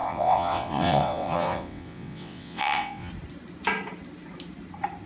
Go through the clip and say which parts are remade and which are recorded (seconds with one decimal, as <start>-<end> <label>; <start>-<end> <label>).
0.0-3.1 remade; 3.1-5.1 recorded